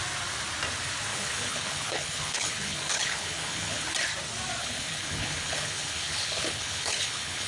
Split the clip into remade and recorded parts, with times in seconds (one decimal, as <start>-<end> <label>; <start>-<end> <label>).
0.0-1.1 recorded; 1.1-3.9 remade; 3.9-4.6 recorded; 4.6-7.5 remade